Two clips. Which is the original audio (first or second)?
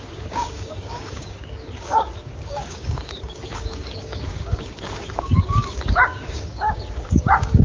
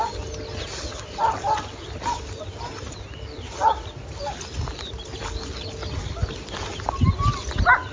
second